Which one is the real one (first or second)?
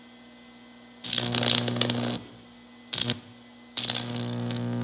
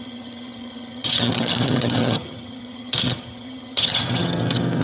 first